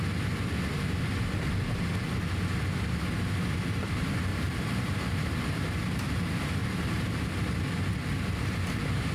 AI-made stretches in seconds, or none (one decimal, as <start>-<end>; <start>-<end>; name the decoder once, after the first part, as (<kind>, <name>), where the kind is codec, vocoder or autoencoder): 4.3-6.1 (vocoder, BigVGAN v2); 6.6-7.2